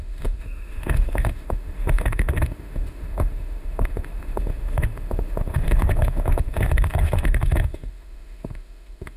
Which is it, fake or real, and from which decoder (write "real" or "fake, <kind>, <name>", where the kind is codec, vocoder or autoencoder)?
fake, autoencoder, DAC-VAE